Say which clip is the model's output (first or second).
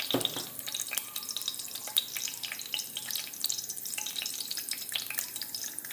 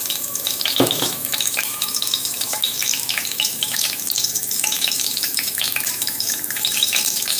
second